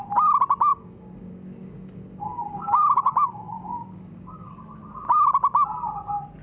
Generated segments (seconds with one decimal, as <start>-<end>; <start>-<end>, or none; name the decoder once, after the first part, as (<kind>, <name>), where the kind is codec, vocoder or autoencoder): 0.7-4.5 (codec, DAC)